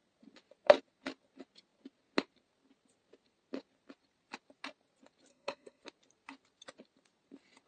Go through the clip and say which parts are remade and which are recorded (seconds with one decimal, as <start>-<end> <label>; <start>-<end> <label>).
0.0-5.3 recorded; 5.3-5.8 remade; 5.8-7.7 recorded